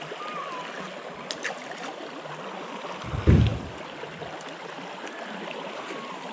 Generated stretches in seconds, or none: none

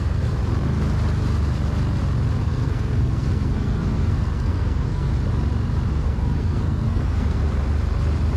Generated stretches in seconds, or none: 0.0-0.4 (codec, SNAC); 2.4-5.1; 5.9-7.4

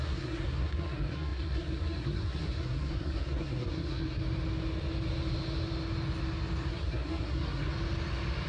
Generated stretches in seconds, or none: 0.0-4.2 (codec, SNAC); 6.7-7.7

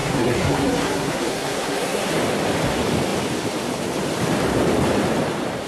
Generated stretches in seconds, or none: 0.0-2.1 (codec, SNAC)

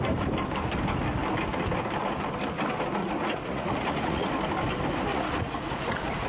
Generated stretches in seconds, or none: 3.0-4.3 (vocoder, Vocos); 5.1-6.3

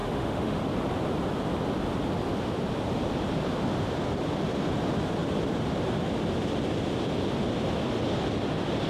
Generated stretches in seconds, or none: 0.0-0.6 (autoencoder, DAC-VAE)

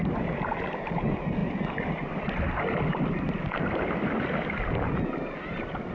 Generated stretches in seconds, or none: none